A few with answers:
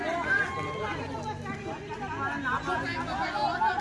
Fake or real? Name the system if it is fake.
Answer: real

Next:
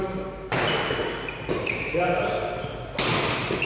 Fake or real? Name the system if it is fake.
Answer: real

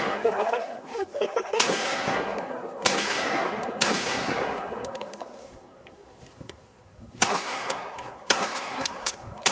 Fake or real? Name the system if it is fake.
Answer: fake, codec, SNAC